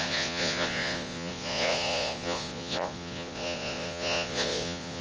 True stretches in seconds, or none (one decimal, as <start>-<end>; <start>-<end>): none

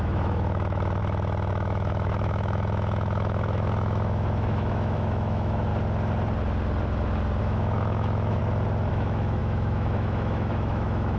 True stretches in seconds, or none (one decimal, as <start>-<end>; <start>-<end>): 1.0-1.5; 5.7-7.4; 8.4-8.9